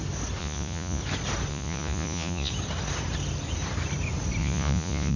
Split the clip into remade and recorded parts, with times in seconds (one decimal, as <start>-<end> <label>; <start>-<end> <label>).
0.0-0.4 recorded; 0.4-1.0 remade; 1.0-1.5 recorded; 1.5-2.5 remade; 2.5-4.4 recorded; 4.4-5.2 remade